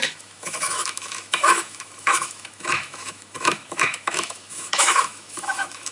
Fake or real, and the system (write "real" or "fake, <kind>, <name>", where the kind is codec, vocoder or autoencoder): fake, autoencoder, DAC-VAE